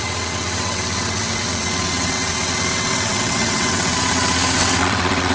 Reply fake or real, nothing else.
fake